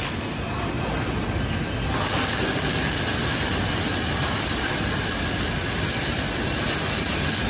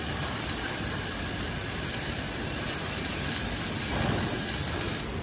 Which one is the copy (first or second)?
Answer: second